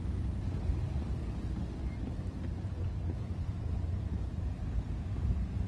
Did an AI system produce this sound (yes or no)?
yes